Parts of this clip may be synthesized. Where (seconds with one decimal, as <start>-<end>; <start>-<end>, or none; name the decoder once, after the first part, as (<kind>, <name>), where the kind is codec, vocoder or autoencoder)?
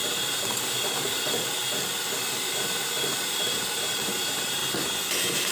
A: 0.0-1.6 (vocoder, BigVGAN v2); 2.3-4.6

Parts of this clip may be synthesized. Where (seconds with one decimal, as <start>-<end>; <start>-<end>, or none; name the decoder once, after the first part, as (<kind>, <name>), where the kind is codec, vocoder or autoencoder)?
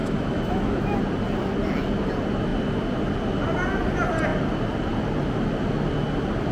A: 0.0-1.0 (autoencoder, DAC-VAE)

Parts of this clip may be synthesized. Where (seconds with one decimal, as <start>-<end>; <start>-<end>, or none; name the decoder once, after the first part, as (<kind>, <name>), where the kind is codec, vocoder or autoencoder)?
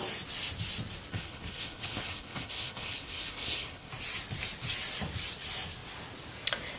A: 1.1-3.9 (codec, HILCodec)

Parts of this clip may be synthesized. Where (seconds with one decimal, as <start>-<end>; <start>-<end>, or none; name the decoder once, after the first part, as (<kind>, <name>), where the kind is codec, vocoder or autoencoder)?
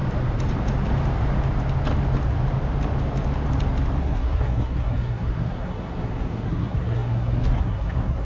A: 4.0-8.2 (codec, SNAC)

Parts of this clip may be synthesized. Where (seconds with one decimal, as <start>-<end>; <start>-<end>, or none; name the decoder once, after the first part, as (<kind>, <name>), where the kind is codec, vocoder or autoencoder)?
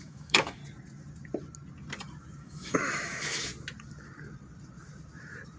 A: 0.0-0.6 (autoencoder, DAC-VAE); 2.4-3.5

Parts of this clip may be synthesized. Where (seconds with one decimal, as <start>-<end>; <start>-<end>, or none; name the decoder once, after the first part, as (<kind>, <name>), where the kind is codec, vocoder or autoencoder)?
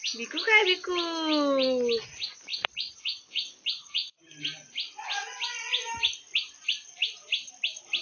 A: 2.5-4.1 (vocoder, BigVGAN v2)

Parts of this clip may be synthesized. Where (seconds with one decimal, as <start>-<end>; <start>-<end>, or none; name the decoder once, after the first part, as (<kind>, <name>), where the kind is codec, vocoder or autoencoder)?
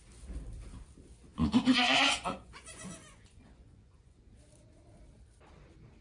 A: 1.3-4.2 (vocoder, Vocos)